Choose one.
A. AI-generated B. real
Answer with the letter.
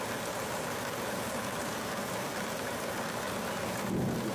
B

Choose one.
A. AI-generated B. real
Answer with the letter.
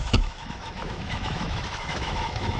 A